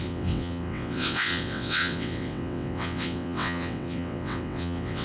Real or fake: fake